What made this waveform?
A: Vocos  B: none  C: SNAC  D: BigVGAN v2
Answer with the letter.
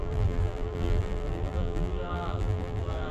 D